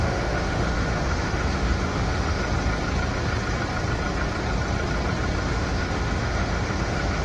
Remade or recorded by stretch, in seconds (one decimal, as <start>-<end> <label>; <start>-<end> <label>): 0.0-2.4 remade; 2.4-5.4 recorded; 5.4-7.2 remade